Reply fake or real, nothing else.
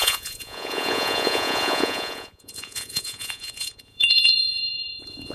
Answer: fake